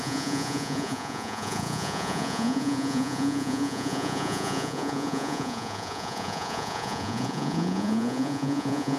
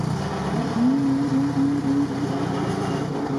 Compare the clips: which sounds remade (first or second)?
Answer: first